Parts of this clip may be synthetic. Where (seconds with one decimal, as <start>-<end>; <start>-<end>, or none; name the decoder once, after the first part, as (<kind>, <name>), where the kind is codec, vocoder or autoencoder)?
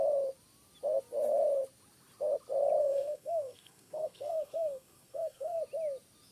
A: 2.8-5.6 (codec, SNAC)